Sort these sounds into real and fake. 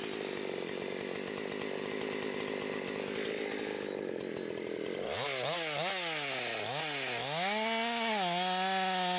real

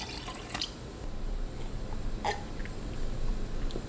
real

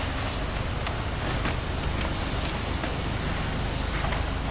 real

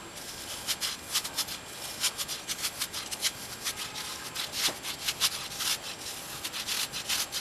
real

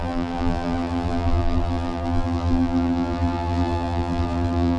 fake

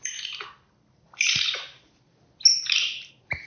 real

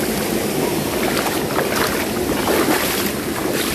real